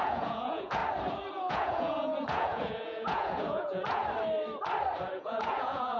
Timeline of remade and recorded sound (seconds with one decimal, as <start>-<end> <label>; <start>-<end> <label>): 0.0-0.8 remade; 0.8-1.5 recorded; 1.5-4.0 remade; 4.0-5.1 recorded; 5.1-6.0 remade